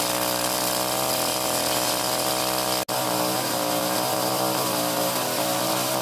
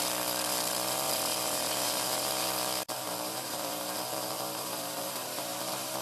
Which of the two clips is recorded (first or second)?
first